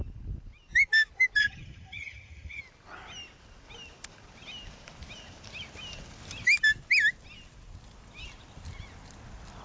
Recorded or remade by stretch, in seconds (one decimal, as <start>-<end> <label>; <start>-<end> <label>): 0.0-1.4 recorded; 1.4-2.6 remade; 2.6-9.6 recorded